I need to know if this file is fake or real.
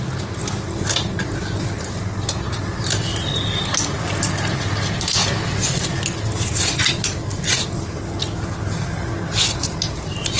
real